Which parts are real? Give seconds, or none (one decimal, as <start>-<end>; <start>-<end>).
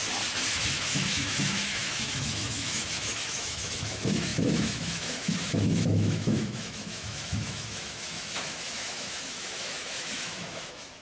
0.0-0.6